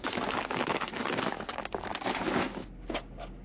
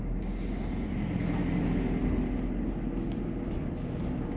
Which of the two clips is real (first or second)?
second